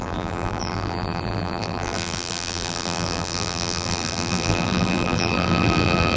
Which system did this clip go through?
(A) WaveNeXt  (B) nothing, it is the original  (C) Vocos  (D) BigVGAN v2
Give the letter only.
D